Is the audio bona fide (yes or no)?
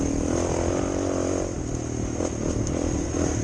yes